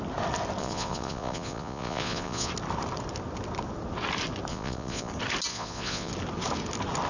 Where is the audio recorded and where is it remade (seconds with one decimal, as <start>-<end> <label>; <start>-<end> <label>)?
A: 0.0-0.6 recorded; 0.6-2.5 remade; 2.5-4.5 recorded; 4.5-5.1 remade; 5.1-5.5 recorded; 5.5-6.1 remade; 6.1-7.1 recorded